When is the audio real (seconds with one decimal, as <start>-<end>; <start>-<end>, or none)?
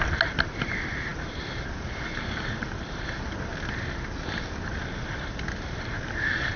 0.0-6.6